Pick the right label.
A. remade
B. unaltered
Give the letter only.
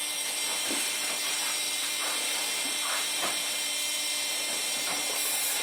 A